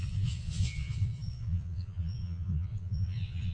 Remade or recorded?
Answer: remade